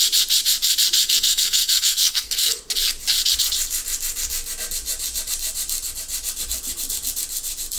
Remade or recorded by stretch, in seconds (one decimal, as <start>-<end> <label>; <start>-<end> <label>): 0.0-1.0 recorded; 1.0-2.6 remade; 2.6-7.8 recorded